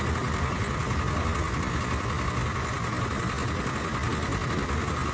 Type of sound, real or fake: real